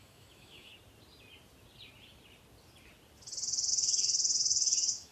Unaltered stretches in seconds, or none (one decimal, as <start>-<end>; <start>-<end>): 0.7-3.7